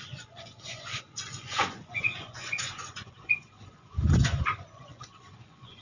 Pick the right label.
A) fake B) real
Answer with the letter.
A